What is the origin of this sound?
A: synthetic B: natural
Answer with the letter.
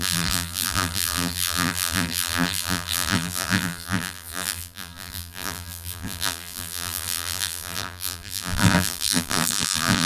A